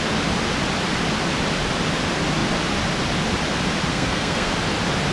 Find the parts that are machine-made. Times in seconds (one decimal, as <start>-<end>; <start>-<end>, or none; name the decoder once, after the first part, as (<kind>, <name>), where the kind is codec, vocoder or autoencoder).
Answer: 3.9-4.5 (codec, SNAC)